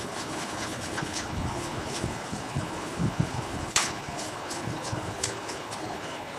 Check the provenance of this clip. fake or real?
fake